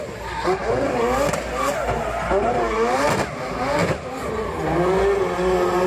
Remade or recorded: recorded